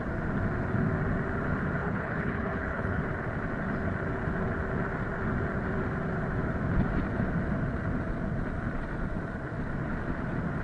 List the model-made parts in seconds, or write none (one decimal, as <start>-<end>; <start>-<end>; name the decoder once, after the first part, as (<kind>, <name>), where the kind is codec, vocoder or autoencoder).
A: 1.8-3.0 (codec, HILCodec)